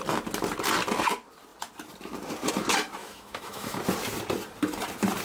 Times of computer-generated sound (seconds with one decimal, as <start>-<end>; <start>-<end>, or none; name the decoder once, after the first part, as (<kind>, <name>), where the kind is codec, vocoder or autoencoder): 3.0-3.8 (autoencoder, DAC-VAE)